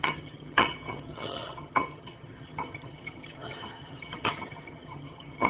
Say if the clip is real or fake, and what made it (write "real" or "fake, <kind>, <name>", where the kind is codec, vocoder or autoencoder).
fake, vocoder, HiFi-GAN